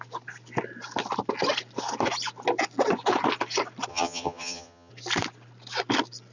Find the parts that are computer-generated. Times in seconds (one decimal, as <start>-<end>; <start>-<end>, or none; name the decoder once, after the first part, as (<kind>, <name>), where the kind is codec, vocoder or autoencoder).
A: 3.9-4.9 (vocoder, HiFi-GAN)